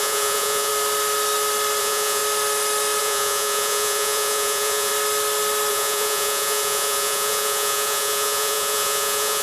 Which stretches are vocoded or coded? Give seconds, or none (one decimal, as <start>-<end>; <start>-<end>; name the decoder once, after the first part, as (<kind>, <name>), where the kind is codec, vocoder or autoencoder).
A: 0.0-0.7 (vocoder, Vocos); 1.8-2.2; 3.0-4.9; 5.7-9.4